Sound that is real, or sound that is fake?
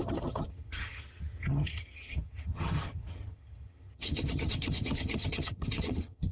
fake